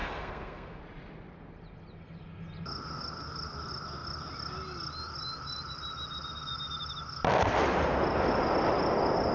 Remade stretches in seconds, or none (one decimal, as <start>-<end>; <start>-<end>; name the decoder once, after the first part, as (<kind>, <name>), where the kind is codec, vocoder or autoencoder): 0.0-0.8 (codec, SNAC)